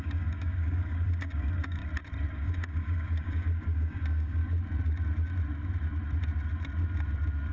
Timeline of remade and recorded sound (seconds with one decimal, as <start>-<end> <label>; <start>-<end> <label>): 0.0-1.8 remade; 1.8-2.3 recorded; 2.3-4.4 remade; 4.4-7.5 recorded